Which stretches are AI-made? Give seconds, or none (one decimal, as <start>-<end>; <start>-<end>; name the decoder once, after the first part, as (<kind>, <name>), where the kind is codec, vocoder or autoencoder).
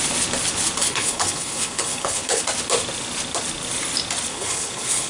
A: 0.8-2.4 (codec, HILCodec); 4.3-5.1